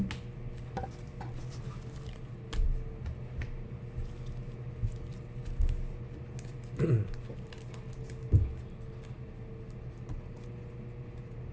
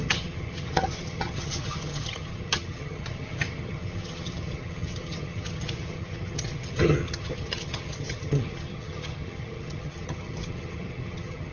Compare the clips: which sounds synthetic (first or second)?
second